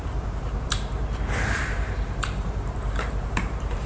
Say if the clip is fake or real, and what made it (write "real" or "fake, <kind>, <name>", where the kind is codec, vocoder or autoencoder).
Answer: fake, vocoder, BigVGAN v2